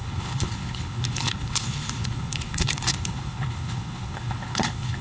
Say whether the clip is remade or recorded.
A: remade